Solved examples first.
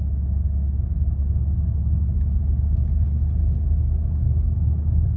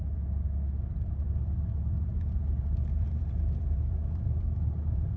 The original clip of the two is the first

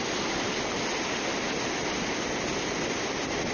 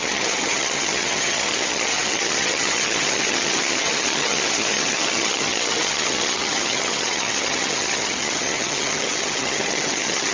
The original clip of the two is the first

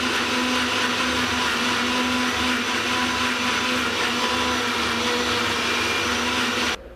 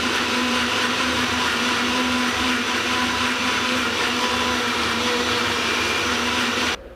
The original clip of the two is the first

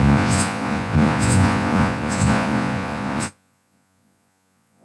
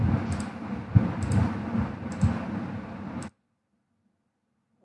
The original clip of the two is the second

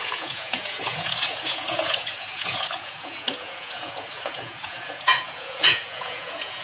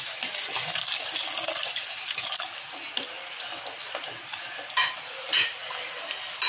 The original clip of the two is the second